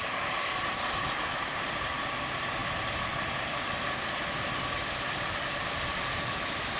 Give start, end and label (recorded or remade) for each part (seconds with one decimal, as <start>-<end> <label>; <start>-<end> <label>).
0.0-2.6 recorded; 2.6-6.8 remade